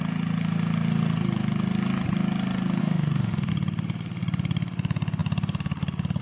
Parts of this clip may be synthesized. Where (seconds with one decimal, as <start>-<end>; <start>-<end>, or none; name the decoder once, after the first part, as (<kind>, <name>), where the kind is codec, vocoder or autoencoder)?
2.8-3.5 (autoencoder, DAC-VAE)